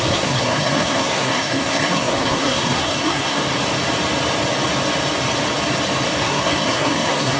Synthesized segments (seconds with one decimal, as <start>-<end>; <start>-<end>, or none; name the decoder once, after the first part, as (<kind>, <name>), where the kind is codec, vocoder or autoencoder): 0.0-3.4 (codec, SNAC); 6.2-7.4